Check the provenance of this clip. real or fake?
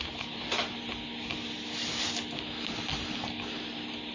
real